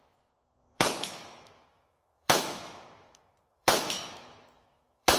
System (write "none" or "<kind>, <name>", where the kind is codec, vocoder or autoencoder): autoencoder, DAC-VAE